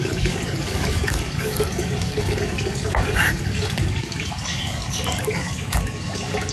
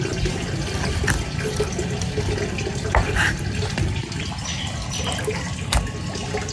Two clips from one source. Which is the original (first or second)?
second